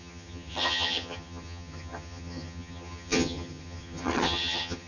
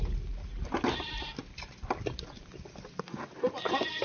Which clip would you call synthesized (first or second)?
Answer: first